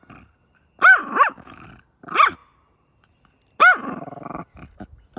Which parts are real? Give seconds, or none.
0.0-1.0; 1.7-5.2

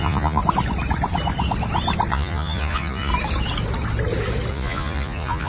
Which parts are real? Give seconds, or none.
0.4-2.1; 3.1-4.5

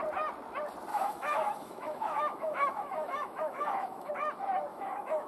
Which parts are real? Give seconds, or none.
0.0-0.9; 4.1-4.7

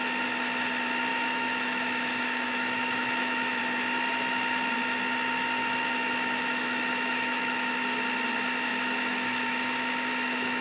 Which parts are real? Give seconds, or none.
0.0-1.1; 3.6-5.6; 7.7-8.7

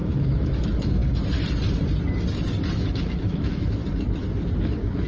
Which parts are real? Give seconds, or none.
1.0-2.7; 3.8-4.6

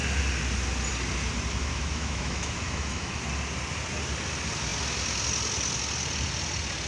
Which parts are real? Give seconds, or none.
0.0-1.7; 3.2-6.9

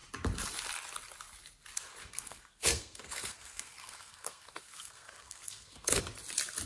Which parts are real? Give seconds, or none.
0.0-2.0; 6.0-6.7

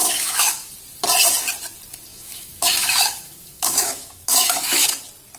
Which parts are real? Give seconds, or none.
0.7-2.1; 5.0-5.4